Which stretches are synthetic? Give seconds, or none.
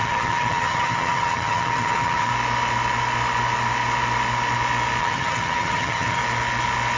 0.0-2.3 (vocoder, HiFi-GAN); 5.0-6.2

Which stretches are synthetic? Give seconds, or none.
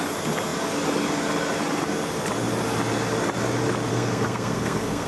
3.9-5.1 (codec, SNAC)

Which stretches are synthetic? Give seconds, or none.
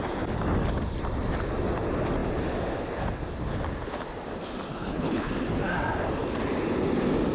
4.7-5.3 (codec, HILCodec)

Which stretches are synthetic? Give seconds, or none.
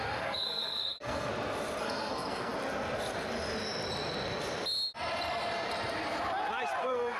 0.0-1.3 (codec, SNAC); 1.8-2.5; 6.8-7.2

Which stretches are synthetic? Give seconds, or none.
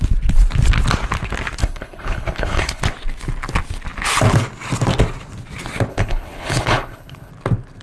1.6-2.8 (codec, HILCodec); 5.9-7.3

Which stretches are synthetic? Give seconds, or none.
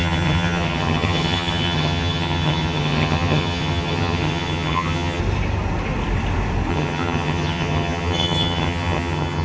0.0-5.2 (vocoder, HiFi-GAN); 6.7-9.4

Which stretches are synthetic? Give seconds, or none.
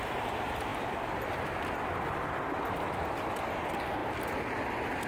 none